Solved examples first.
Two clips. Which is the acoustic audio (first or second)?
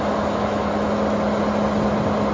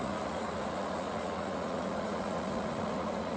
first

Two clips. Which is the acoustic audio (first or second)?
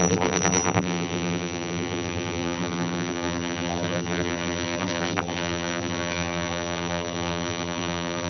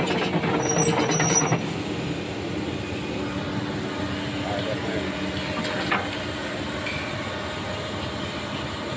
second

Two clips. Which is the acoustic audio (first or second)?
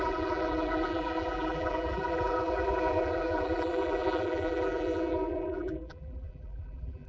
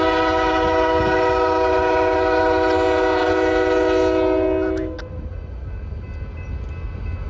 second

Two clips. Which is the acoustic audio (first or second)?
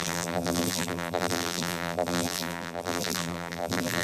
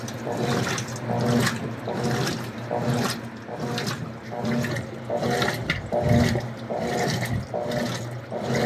second